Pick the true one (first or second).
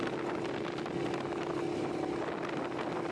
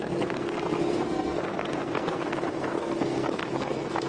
first